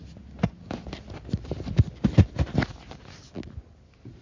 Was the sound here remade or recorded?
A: recorded